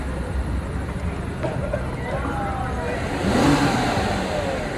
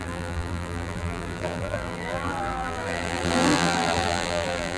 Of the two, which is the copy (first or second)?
second